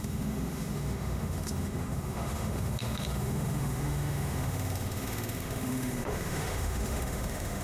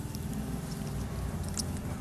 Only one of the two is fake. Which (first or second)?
first